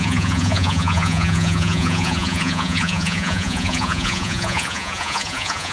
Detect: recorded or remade remade